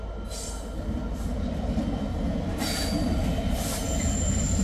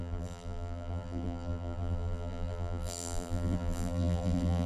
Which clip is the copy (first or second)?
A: second